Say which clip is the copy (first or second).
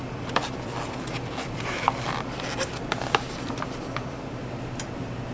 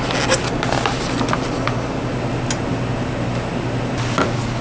first